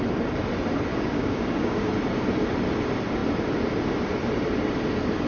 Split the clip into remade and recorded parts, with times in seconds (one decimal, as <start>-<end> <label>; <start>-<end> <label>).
0.0-0.9 recorded; 0.9-1.9 remade; 1.9-5.3 recorded